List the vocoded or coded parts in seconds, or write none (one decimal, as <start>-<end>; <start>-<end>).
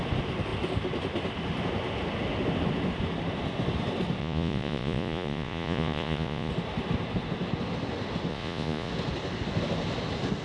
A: 4.2-6.5; 8.3-8.9